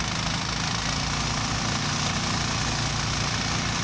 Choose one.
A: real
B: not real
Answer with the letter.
A